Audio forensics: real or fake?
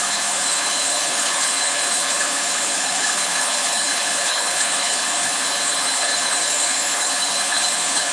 fake